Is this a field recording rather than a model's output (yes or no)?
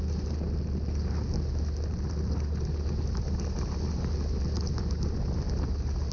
yes